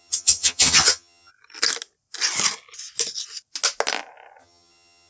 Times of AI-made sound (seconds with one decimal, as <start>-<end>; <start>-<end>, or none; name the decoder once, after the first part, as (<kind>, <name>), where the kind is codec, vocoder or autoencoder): 0.0-1.3 (vocoder, HiFi-GAN); 4.4-5.1